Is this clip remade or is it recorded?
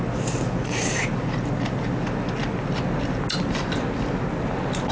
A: recorded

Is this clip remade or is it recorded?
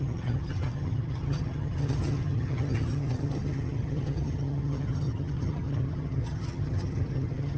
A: remade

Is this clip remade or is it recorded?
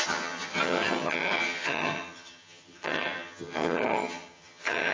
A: remade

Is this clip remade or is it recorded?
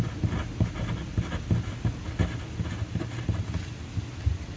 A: recorded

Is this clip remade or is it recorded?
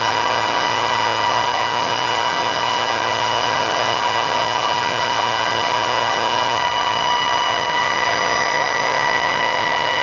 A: remade